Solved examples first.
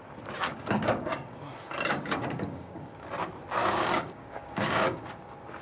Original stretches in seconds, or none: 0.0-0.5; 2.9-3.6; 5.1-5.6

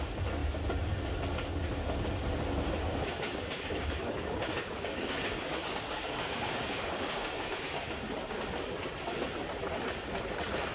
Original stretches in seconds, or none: 0.0-2.9; 8.0-10.7

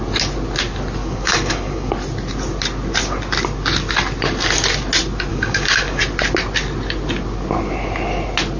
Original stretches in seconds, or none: 0.0-1.0; 1.9-5.3; 6.0-8.6

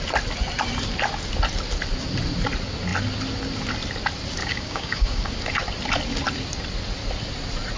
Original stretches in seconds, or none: 0.0-4.4; 5.3-7.8

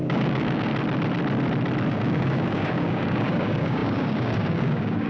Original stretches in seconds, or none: 0.7-1.9

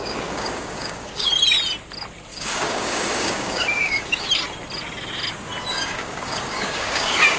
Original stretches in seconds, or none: 1.3-2.3; 4.3-5.7